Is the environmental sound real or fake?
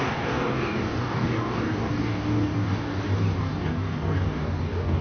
fake